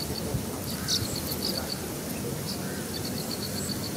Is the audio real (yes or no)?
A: yes